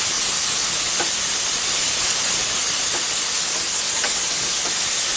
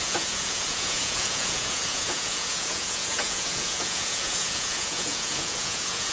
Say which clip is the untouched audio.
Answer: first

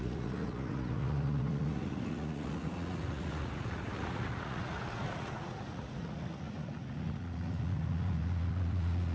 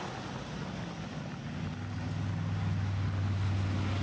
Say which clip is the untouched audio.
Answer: second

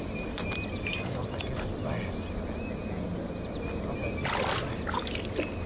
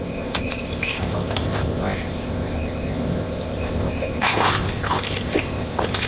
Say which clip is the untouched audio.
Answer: first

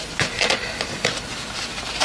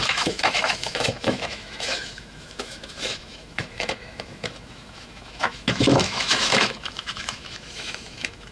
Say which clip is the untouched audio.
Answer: first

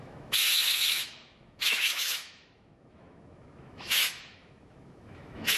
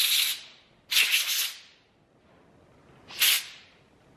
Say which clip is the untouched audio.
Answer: second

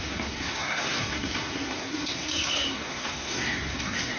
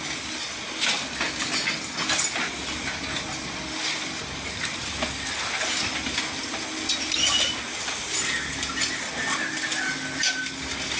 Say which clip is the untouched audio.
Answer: second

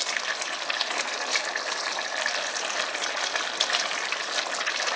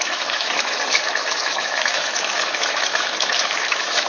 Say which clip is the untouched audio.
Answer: first